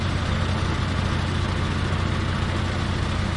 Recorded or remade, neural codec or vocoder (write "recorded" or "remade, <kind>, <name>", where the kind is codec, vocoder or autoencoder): recorded